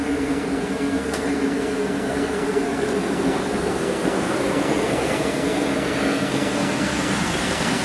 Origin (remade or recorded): remade